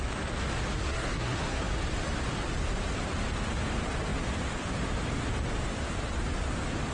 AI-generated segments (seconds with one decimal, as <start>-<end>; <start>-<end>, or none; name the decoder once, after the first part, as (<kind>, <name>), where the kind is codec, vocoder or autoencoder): 0.8-1.7 (codec, SNAC)